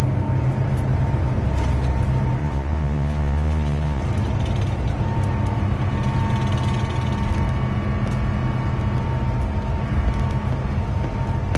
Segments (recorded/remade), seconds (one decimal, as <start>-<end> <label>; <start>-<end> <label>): 0.0-2.4 recorded; 2.4-4.0 remade; 4.0-11.6 recorded